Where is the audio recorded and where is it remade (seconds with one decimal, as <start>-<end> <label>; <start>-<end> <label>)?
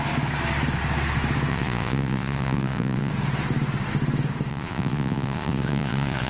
0.0-1.5 recorded; 1.5-3.1 remade; 3.1-4.5 recorded; 4.5-6.3 remade